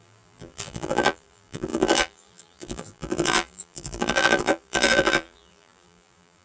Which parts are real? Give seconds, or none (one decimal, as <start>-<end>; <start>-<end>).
none